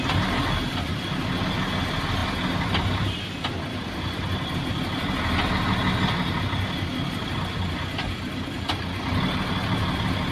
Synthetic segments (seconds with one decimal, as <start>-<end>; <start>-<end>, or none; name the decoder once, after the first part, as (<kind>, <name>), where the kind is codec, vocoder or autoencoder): none